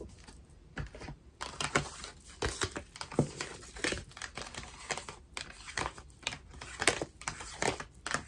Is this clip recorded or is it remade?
recorded